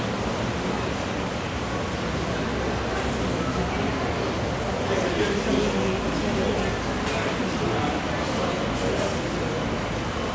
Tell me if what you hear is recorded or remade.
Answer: recorded